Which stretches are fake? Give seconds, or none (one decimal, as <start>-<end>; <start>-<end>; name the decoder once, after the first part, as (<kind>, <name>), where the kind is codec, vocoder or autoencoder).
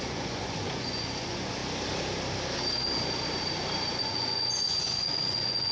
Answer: 0.0-1.6 (vocoder, Vocos); 4.0-5.7